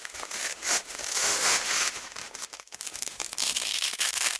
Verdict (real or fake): fake